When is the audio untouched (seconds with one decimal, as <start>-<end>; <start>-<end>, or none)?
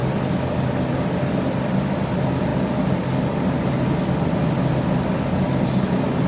0.0-6.3